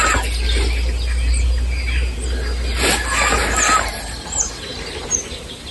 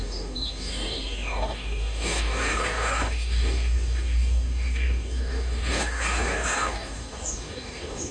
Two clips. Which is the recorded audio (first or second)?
first